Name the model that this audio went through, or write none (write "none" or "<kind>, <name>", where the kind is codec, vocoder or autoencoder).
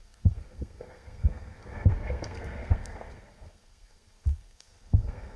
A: codec, SNAC